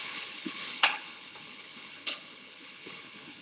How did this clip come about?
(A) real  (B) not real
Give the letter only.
B